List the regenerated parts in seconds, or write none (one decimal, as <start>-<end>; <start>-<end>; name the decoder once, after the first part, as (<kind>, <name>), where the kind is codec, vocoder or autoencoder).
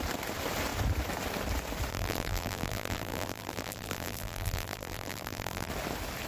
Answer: 1.9-5.7 (vocoder, BigVGAN v2)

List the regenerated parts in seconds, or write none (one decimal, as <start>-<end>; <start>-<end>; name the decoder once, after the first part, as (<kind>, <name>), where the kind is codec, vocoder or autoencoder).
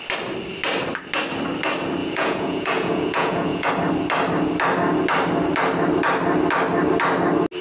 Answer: 2.0-3.7 (vocoder, Vocos)